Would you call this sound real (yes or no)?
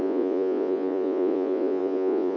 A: no